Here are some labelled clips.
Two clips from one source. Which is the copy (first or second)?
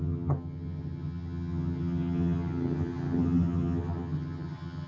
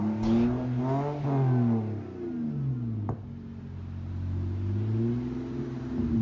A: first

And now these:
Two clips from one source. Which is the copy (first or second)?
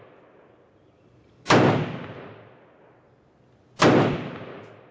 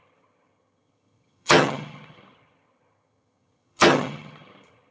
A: second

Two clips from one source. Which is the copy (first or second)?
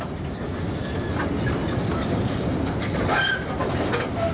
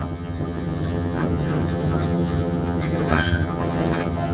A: second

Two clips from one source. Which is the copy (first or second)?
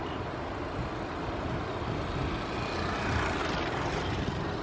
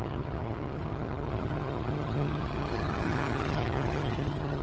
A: second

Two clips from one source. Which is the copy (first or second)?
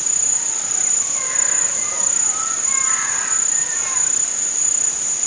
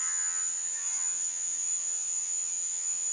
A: second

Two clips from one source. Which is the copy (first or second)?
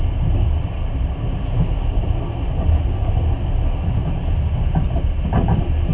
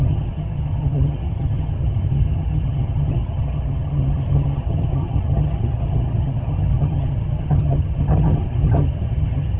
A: second